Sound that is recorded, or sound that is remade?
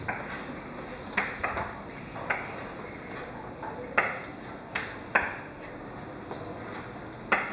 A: recorded